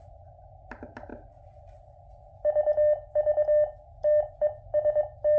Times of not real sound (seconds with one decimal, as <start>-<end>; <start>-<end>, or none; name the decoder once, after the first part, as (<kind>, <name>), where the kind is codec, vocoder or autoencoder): none